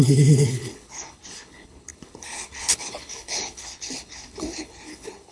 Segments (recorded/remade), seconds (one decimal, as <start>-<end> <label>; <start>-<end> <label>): 0.0-5.3 remade